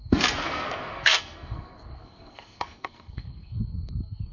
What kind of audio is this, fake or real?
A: fake